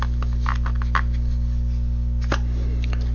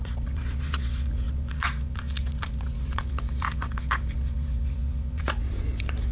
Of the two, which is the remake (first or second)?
second